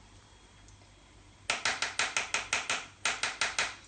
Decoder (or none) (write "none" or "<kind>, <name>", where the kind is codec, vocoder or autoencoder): none